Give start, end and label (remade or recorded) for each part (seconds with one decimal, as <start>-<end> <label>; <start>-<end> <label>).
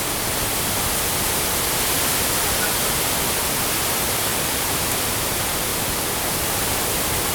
0.0-4.3 recorded; 4.3-4.9 remade; 4.9-7.3 recorded